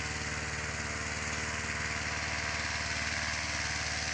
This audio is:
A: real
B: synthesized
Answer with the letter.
A